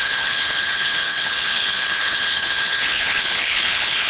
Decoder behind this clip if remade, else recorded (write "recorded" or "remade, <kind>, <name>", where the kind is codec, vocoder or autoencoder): remade, codec, HILCodec